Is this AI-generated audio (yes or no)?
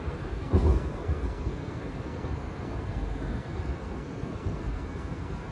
yes